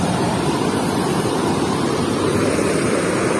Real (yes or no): no